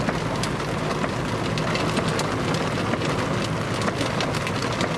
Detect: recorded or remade recorded